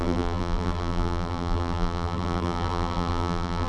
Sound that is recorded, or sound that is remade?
remade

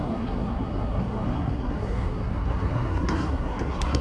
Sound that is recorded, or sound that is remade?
remade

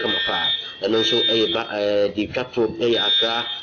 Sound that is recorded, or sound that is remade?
recorded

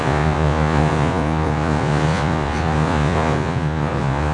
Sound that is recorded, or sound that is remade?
remade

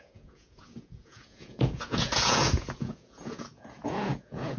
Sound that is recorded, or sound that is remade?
remade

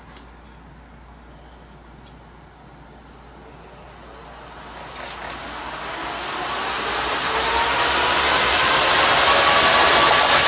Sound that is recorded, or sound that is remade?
recorded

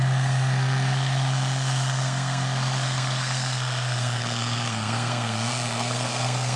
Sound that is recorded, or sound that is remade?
remade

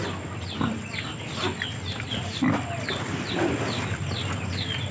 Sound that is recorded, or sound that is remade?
recorded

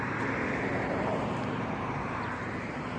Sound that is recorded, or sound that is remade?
recorded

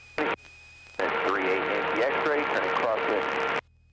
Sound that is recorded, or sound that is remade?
recorded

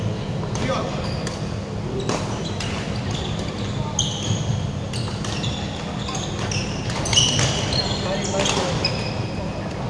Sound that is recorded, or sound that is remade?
recorded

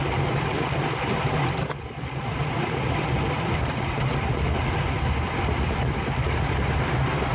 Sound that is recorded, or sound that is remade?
recorded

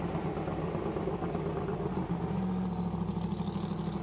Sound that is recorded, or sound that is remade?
recorded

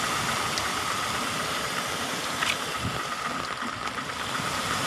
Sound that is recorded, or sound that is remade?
recorded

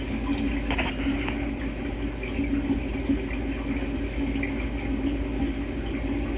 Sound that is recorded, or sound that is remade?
recorded